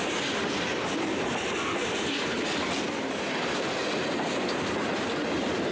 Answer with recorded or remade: remade